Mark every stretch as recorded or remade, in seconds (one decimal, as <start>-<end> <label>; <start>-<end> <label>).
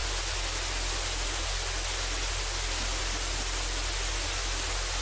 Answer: 0.0-5.0 recorded